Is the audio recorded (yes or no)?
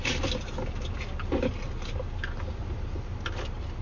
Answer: yes